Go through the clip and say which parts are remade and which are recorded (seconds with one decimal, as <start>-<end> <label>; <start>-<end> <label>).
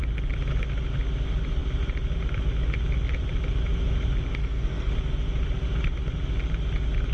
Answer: 0.0-4.4 recorded; 4.4-4.9 remade; 4.9-7.1 recorded